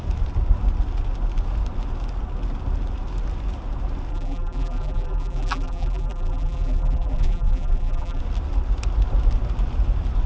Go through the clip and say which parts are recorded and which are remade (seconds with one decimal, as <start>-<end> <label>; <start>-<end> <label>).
0.0-4.1 recorded; 4.1-8.2 remade; 8.2-10.3 recorded